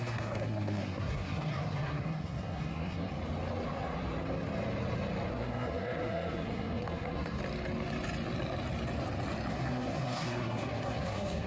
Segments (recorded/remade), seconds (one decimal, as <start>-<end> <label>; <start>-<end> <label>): 0.0-3.1 remade; 3.1-5.3 recorded; 5.3-7.4 remade; 7.4-9.5 recorded; 9.5-11.5 remade